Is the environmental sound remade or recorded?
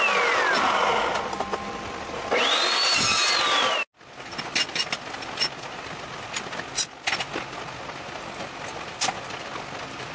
recorded